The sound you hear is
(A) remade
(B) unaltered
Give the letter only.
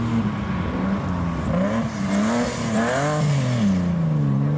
B